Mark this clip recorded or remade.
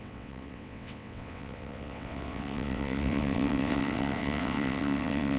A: remade